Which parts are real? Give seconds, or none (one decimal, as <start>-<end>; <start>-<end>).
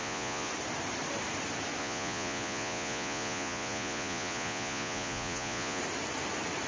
0.5-1.8; 5.8-6.7